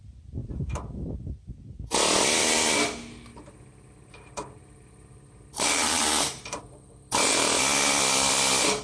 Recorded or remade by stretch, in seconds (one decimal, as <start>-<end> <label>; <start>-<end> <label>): 0.0-0.4 recorded; 0.4-1.1 remade; 1.1-3.3 recorded; 3.3-6.6 remade; 6.6-8.8 recorded